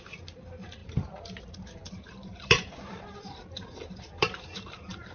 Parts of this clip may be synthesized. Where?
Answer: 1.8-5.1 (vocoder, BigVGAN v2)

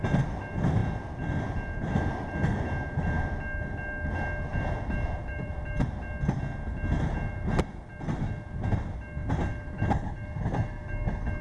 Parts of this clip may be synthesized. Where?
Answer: 4.5-5.8 (vocoder, BigVGAN v2); 9.2-10.7

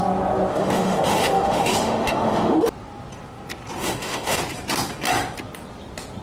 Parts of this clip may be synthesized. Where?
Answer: 0.5-2.6 (autoencoder, DAC-VAE); 3.8-4.4